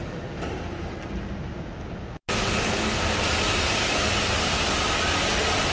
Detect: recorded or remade recorded